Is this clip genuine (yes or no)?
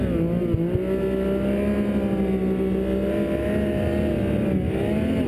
yes